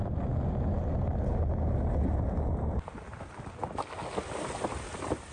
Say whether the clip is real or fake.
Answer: real